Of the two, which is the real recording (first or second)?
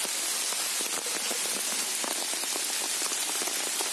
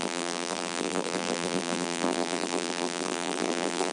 first